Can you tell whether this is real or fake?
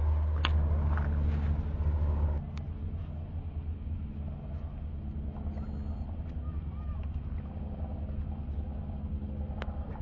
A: real